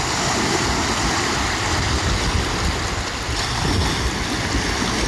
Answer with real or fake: real